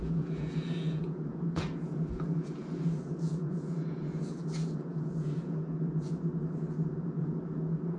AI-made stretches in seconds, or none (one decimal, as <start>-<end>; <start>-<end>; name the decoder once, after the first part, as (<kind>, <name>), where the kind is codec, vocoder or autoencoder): 0.0-8.0 (vocoder, Vocos)